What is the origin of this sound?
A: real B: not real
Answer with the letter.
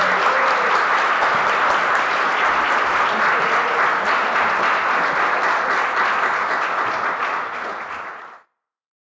A